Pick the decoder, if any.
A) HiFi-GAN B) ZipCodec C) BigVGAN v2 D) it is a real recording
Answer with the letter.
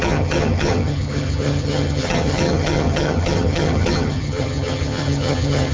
A